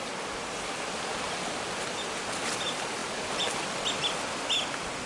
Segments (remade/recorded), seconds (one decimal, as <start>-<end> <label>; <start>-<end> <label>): 0.0-5.1 recorded

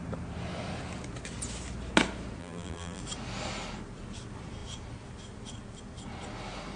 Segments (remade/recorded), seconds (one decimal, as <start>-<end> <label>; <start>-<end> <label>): 0.0-2.4 recorded; 2.4-3.0 remade; 3.0-6.8 recorded

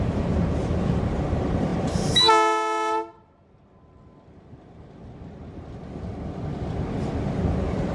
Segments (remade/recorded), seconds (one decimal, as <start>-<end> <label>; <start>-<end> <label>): 0.0-7.9 recorded